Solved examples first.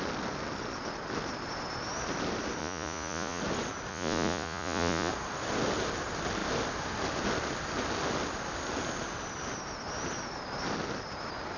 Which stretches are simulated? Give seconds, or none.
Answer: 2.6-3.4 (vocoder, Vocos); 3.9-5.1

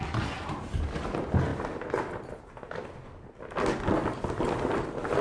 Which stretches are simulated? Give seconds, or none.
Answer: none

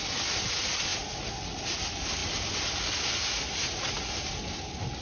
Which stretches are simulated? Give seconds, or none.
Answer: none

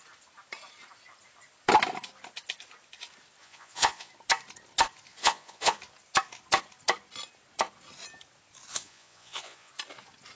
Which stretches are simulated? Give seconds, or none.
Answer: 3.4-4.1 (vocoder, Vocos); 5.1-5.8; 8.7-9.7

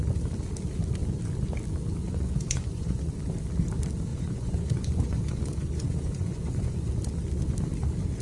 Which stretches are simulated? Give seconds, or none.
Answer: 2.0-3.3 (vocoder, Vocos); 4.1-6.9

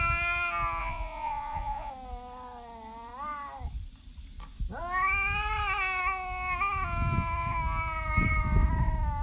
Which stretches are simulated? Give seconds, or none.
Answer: 0.8-1.9 (vocoder, Vocos)

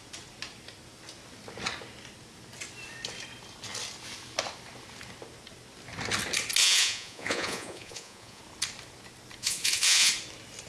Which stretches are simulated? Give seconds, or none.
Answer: 6.6-8.4 (vocoder, Vocos); 9.4-10.1

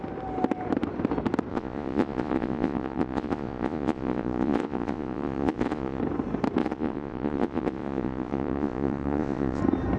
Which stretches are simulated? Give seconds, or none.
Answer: 1.5-6.0 (vocoder, Vocos); 6.6-9.6